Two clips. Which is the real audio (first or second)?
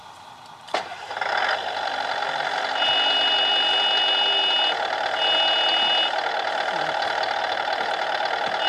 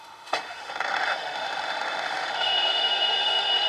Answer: first